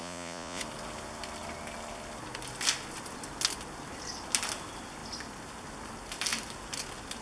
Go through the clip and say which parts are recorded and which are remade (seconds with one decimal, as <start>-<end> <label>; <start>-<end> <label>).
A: 0.0-0.6 remade; 0.6-7.2 recorded